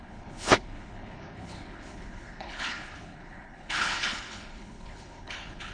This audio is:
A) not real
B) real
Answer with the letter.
A